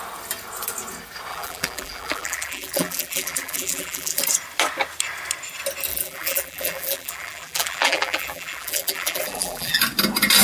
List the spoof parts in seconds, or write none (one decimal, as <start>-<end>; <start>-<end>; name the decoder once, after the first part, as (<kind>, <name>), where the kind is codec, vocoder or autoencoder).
1.3-4.2 (vocoder, BigVGAN v2); 5.9-9.8